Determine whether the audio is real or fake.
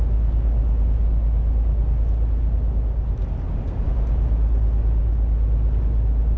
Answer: real